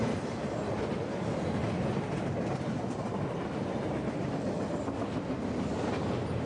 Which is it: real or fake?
fake